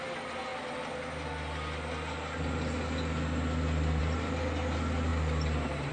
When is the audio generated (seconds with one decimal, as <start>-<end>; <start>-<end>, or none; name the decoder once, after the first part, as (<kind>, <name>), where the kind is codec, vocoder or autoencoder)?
none